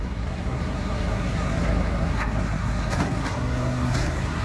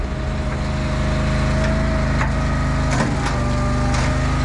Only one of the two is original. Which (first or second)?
second